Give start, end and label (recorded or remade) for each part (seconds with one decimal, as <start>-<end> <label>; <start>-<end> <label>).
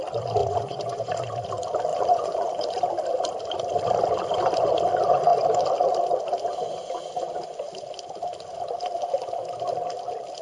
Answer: 0.0-0.4 recorded; 0.4-1.1 remade; 1.1-1.9 recorded; 1.9-2.8 remade; 2.8-10.4 recorded